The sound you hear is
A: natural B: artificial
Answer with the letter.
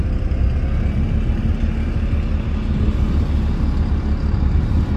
A